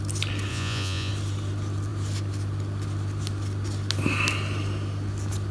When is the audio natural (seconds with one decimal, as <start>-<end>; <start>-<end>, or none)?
0.0-0.5; 1.1-5.5